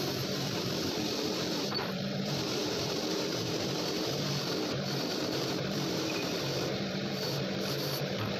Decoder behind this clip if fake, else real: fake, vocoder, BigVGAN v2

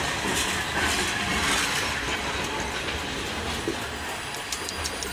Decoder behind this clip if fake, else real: real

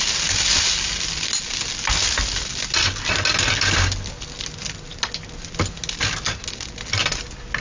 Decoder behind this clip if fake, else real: real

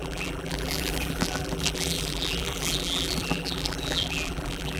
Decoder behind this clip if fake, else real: fake, vocoder, BigVGAN v2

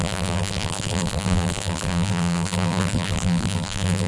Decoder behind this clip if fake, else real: fake, vocoder, BigVGAN v2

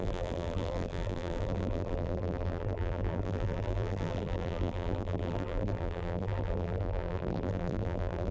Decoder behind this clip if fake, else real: fake, vocoder, BigVGAN v2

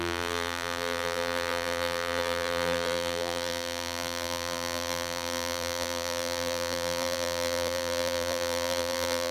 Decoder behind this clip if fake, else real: fake, vocoder, BigVGAN v2